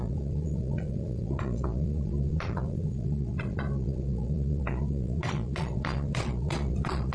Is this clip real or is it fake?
fake